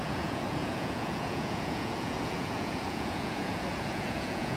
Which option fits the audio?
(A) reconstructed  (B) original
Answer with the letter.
A